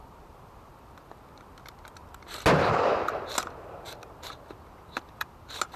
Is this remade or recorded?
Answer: recorded